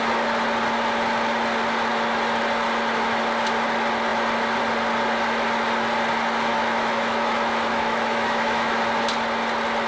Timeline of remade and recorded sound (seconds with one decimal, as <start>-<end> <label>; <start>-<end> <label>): 0.0-6.5 recorded; 6.5-8.8 remade; 8.8-9.9 recorded

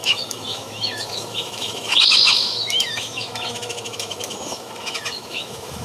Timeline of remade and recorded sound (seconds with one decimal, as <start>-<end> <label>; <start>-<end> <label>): 0.0-5.8 remade

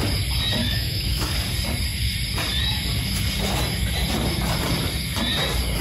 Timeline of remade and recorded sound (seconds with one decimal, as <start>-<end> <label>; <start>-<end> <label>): 0.0-0.6 recorded; 0.6-1.3 remade; 1.3-5.8 recorded

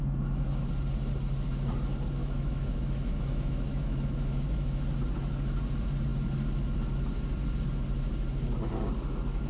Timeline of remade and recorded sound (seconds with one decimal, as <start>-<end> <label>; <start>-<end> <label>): 0.0-2.2 recorded; 2.2-4.8 remade; 4.8-9.5 recorded

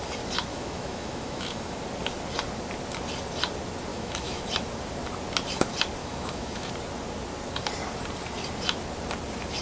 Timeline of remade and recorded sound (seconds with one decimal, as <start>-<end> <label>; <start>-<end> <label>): 0.0-0.5 recorded; 0.5-1.8 remade; 1.8-3.9 recorded; 3.9-4.4 remade; 4.4-6.0 recorded; 6.0-6.7 remade; 6.7-9.6 recorded